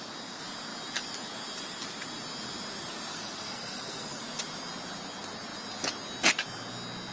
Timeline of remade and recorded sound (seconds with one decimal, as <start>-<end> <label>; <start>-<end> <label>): 0.0-3.1 recorded; 3.1-4.2 remade; 4.2-7.1 recorded